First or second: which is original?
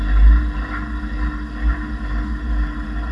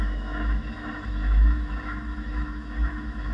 first